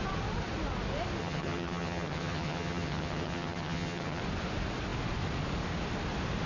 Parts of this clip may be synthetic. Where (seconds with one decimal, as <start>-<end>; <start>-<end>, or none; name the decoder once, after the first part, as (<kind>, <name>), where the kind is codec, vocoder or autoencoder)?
1.2-4.2 (vocoder, HiFi-GAN)